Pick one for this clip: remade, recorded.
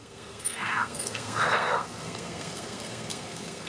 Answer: remade